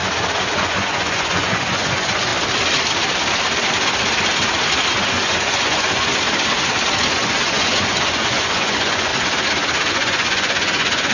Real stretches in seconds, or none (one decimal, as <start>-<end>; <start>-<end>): 0.0-0.5; 2.3-5.1; 6.1-7.1; 9.1-9.9